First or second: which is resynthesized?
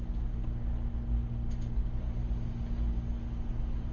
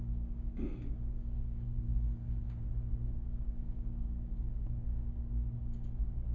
second